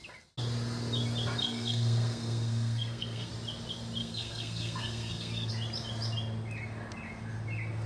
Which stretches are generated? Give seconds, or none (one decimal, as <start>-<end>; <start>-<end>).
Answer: 1.4-3.3; 4.0-5.5